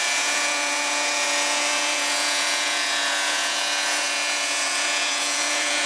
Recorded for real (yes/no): no